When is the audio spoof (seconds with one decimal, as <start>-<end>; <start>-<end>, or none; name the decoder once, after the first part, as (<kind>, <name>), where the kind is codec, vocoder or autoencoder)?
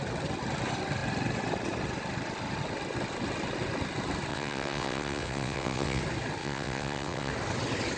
4.3-6.0 (vocoder, WaveNeXt); 6.4-7.3